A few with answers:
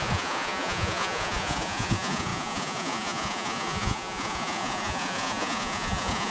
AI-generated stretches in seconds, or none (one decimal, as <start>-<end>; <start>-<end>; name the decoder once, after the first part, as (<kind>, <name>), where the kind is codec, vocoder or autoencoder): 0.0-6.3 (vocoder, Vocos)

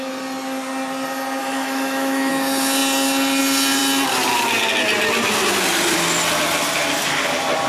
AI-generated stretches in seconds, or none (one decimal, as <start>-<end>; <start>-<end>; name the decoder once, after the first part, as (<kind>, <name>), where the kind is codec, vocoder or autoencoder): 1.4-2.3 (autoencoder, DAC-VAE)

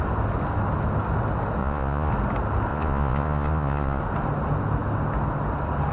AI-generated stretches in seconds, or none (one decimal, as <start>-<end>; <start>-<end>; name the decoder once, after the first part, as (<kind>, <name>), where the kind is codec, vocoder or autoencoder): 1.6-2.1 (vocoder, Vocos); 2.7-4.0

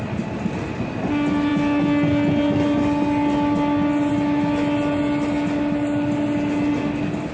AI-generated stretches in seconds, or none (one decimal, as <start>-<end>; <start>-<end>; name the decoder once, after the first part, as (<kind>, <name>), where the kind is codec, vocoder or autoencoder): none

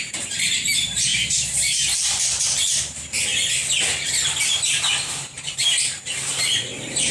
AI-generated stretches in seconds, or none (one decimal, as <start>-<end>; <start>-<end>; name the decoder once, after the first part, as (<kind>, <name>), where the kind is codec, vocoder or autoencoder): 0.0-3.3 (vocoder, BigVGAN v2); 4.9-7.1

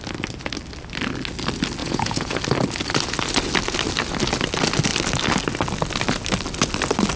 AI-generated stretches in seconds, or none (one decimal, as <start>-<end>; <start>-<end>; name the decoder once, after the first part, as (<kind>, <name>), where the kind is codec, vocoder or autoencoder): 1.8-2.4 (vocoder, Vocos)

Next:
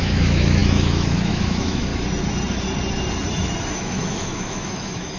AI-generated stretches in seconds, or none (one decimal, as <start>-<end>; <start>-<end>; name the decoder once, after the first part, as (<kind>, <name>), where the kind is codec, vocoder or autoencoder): 0.0-1.9 (autoencoder, DAC-VAE); 3.7-5.2